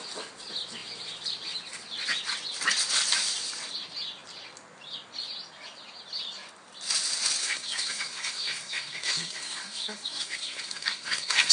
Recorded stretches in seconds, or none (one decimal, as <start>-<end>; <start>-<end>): 0.0-7.4